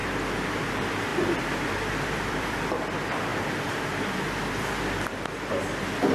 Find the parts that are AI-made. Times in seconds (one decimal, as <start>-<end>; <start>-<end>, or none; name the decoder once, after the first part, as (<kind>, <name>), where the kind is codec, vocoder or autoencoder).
1.1-2.6 (vocoder, BigVGAN v2); 3.3-3.8